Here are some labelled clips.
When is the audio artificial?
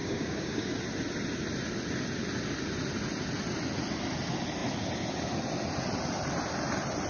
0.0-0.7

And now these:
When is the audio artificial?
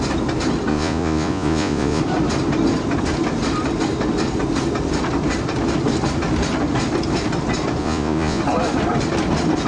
0.7-2.0; 7.8-8.4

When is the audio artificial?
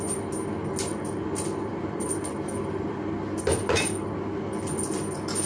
1.7-5.0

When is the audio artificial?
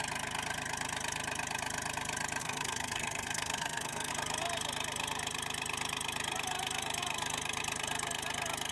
2.4-4.1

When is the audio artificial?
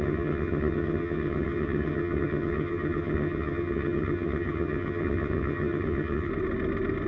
0.0-6.3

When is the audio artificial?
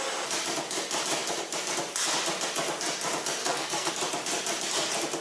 3.4-3.9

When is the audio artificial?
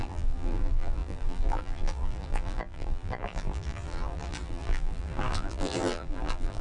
0.0-6.6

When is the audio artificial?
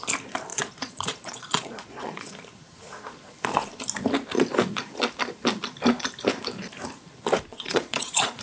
0.5-2.3; 7.5-8.4